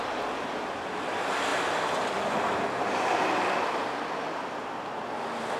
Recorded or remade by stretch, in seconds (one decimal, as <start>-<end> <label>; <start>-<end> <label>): 0.0-5.6 recorded